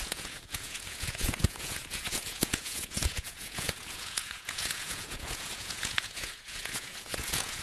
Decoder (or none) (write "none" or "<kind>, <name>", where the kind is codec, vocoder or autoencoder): vocoder, Vocos